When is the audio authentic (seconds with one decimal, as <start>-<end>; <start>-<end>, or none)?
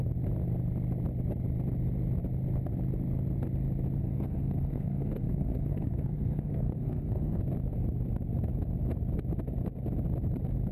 0.0-4.0; 7.4-10.7